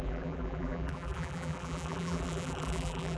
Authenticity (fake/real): fake